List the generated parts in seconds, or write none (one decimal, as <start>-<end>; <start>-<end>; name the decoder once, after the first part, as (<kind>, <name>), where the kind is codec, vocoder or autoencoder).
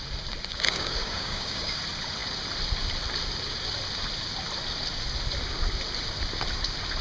0.5-1.8 (codec, DAC)